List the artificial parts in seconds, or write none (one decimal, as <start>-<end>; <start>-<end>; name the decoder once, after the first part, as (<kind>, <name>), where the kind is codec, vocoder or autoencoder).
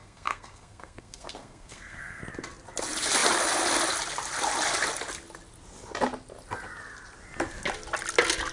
0.0-2.2 (codec, SNAC)